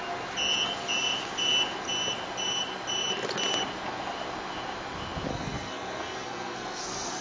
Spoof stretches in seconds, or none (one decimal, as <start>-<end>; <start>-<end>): 5.3-7.2